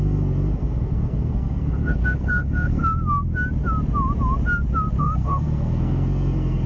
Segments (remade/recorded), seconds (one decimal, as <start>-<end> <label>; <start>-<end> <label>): 0.0-2.8 remade; 2.8-5.0 recorded; 5.0-6.7 remade